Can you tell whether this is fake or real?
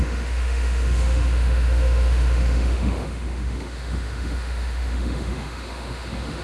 fake